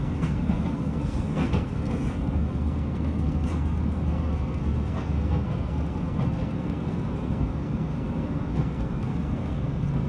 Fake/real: fake